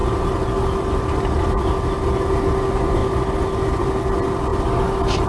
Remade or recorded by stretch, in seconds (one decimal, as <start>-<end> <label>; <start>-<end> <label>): 0.0-5.3 recorded